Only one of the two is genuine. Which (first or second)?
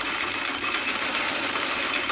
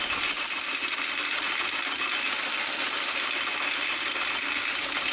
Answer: second